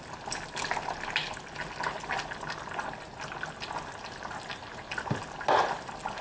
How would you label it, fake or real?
real